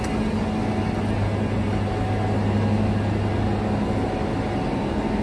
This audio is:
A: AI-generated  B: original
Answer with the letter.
B